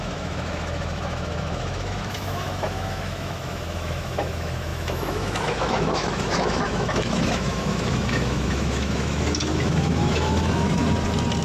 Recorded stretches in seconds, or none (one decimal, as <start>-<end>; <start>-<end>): 10.8-11.4